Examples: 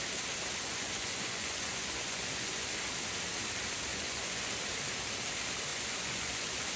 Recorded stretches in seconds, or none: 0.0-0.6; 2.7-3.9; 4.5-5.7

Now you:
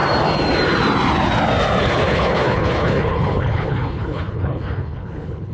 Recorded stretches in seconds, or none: 0.0-1.8

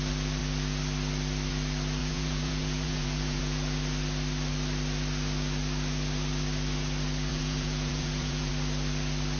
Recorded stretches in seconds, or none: 0.0-2.0; 3.4-7.3; 8.5-9.4

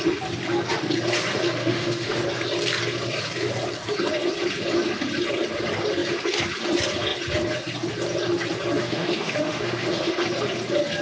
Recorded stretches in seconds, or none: 0.0-1.6; 2.2-8.8; 10.1-11.0